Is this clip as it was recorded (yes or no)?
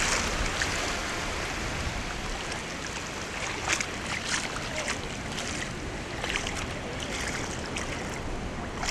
yes